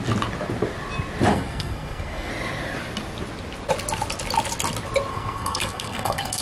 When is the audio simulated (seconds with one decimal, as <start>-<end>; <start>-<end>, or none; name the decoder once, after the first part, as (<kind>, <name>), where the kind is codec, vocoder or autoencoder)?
1.3-2.3 (codec, SNAC); 5.1-6.4